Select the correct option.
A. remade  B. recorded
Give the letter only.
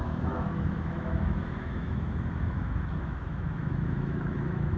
A